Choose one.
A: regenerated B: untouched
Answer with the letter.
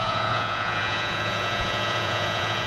A